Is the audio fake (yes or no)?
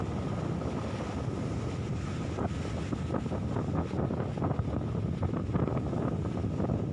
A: no